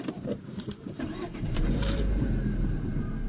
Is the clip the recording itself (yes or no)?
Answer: no